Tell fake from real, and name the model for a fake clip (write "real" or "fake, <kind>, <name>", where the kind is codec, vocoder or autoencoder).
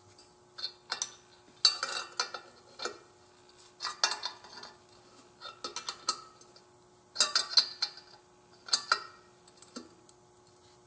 real